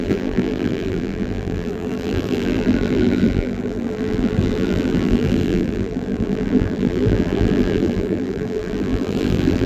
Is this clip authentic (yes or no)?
no